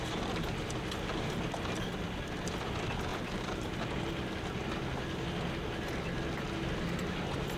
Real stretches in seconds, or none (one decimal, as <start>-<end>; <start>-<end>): 0.0-3.1; 3.8-7.6